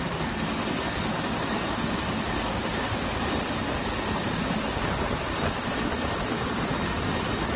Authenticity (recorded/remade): recorded